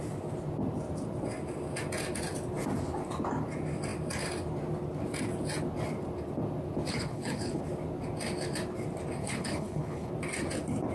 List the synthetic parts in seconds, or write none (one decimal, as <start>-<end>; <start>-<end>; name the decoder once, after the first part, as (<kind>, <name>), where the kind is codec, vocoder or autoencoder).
6.9-7.6 (codec, HILCodec); 9.2-10.1